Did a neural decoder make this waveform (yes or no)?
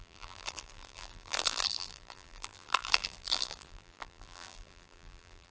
yes